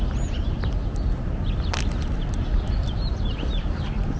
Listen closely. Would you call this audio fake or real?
real